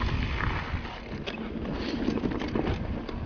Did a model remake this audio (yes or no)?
no